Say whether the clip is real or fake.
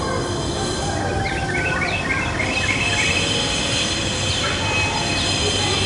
fake